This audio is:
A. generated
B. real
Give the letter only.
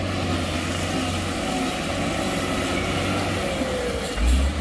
B